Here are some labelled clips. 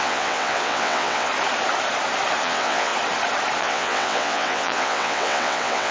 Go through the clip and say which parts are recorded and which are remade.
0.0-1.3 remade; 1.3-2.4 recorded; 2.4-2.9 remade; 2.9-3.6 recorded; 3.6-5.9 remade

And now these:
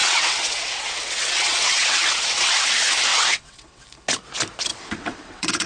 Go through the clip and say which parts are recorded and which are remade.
0.0-2.5 remade; 2.5-3.1 recorded; 3.1-3.8 remade; 3.8-4.7 recorded; 4.7-5.7 remade

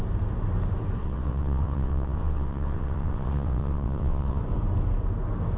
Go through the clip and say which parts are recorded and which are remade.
0.0-1.0 recorded; 1.0-4.4 remade; 4.4-5.6 recorded

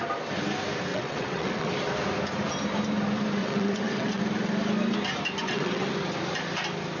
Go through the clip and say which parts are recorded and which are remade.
0.0-0.9 recorded; 0.9-1.7 remade; 1.7-3.4 recorded; 3.4-4.2 remade; 4.2-5.4 recorded; 5.4-5.9 remade; 5.9-7.0 recorded

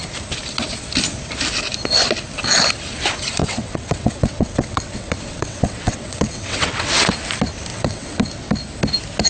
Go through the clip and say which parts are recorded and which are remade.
0.0-3.4 recorded; 3.4-7.1 remade; 7.1-7.7 recorded; 7.7-8.5 remade; 8.5-9.3 recorded